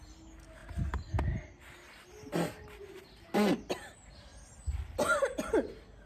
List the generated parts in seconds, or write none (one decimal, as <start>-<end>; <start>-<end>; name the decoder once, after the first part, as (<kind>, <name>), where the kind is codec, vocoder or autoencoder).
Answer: none